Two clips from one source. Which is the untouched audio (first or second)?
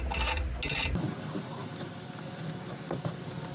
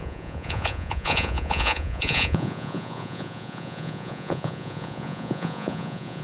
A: first